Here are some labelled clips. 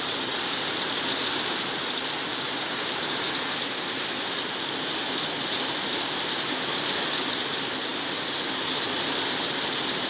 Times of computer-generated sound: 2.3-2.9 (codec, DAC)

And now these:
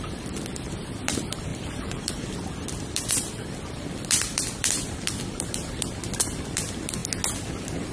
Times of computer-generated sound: 0.0-7.0 (vocoder, BigVGAN v2)

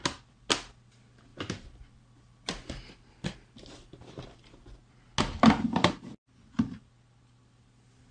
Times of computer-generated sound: 1.3-4.8 (vocoder, BigVGAN v2)

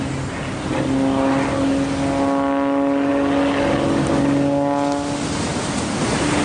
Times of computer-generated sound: none